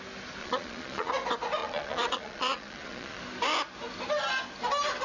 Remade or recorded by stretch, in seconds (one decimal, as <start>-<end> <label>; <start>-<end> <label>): 0.0-0.4 recorded; 0.4-1.1 remade; 1.1-1.6 recorded; 1.6-3.2 remade; 3.2-5.0 recorded